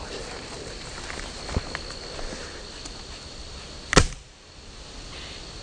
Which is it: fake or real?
real